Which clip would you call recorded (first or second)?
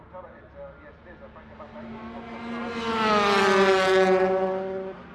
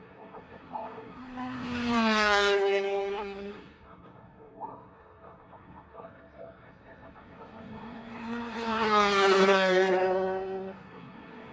first